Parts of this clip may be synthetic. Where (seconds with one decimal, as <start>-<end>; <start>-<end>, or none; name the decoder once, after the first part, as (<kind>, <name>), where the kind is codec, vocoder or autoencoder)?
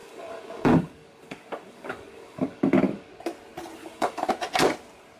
0.0-3.1 (codec, DAC); 3.8-4.3